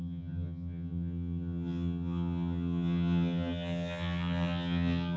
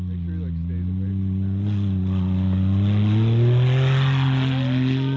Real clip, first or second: second